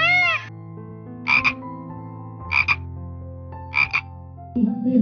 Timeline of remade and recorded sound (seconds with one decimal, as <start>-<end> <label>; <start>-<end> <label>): 0.0-3.9 recorded; 3.9-5.0 remade